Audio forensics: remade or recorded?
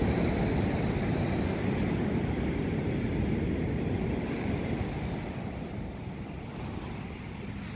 recorded